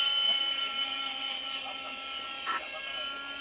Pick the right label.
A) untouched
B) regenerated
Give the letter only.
A